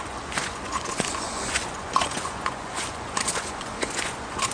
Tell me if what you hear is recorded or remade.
remade